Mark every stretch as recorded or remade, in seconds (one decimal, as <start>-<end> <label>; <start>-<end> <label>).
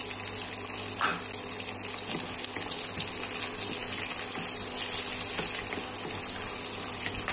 0.0-7.3 recorded